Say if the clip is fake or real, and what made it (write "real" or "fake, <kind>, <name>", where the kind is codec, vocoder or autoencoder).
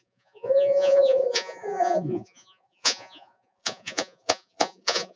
fake, vocoder, Vocos